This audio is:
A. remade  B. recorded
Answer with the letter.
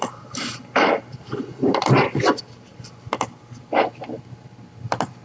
B